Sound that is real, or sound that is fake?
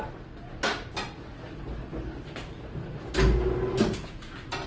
real